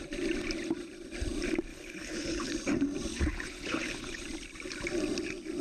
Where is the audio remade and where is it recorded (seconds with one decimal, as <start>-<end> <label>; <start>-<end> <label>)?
0.0-1.7 recorded; 1.7-2.5 remade; 2.5-3.1 recorded; 3.1-4.2 remade; 4.2-5.6 recorded